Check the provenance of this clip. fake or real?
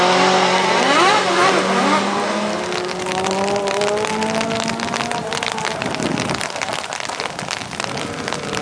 real